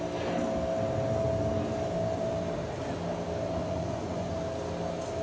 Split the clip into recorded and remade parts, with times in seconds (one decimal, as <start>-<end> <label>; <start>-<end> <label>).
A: 0.0-3.6 recorded; 3.6-4.3 remade; 4.3-5.2 recorded